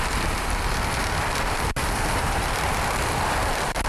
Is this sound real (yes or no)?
yes